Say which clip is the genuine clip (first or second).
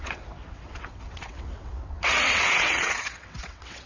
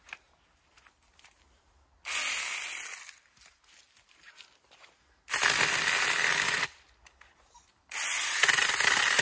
second